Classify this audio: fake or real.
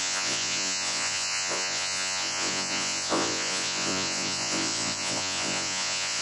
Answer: fake